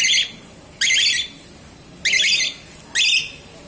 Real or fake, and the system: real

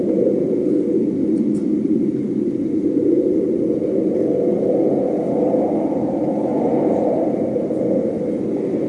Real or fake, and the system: real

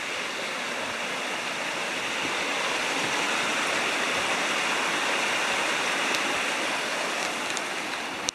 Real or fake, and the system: real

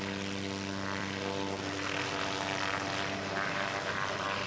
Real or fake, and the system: real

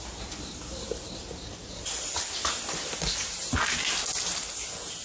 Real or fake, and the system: real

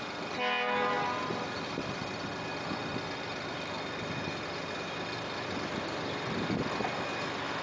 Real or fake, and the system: real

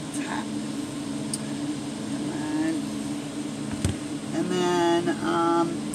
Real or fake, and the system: real